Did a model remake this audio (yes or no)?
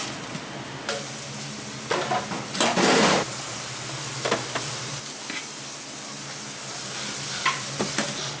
no